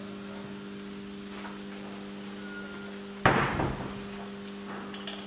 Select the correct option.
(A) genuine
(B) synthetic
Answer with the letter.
A